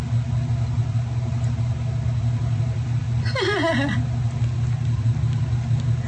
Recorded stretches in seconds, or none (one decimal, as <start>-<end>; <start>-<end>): 0.0-6.1